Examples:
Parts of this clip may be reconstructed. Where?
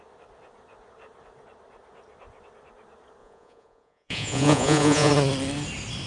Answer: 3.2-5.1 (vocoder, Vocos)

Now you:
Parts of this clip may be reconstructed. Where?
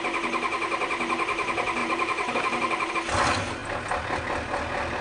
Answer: 1.8-2.9 (vocoder, BigVGAN v2)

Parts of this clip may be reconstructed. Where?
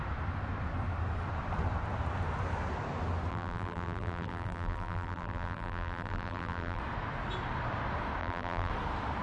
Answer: 3.3-6.8 (vocoder, BigVGAN v2); 8.2-8.7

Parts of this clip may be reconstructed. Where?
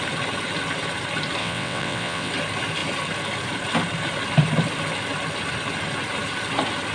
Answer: 1.4-2.3 (vocoder, WaveNeXt)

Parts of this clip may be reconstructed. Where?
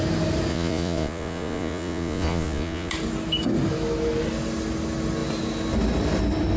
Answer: 0.5-2.9 (vocoder, Vocos)